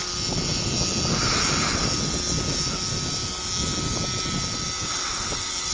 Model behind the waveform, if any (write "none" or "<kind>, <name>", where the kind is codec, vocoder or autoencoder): none